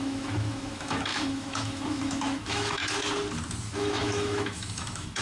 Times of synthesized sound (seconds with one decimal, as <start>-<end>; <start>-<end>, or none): 0.0-2.8; 3.6-5.2